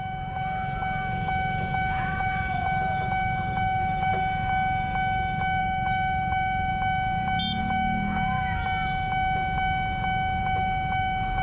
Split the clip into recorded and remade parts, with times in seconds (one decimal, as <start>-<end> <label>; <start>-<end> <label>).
0.0-4.1 remade; 4.1-5.6 recorded; 5.6-6.7 remade; 6.7-7.6 recorded; 7.6-8.6 remade; 8.6-10.4 recorded; 10.4-11.4 remade